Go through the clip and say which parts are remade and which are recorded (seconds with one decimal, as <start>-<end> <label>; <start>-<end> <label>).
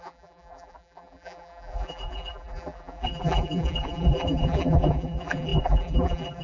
0.0-6.4 remade